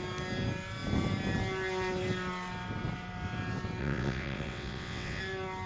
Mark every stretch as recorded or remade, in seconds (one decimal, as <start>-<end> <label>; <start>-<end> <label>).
0.0-3.8 recorded; 3.8-5.2 remade; 5.2-5.7 recorded